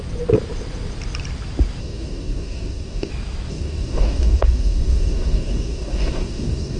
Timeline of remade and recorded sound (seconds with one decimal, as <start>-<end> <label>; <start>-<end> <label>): 0.0-1.8 recorded; 1.8-3.1 remade; 3.1-3.5 recorded; 3.5-6.8 remade